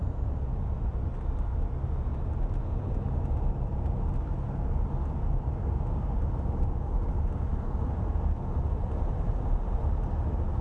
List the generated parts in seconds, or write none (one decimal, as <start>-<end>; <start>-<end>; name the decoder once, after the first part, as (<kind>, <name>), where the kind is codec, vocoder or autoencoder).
none